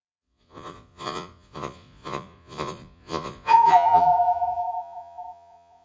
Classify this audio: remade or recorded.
remade